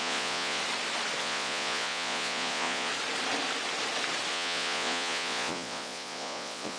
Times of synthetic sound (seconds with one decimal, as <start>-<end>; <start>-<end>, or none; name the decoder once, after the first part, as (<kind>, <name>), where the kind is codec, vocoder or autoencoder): 0.0-0.6 (vocoder, Vocos); 1.2-2.9; 4.3-6.8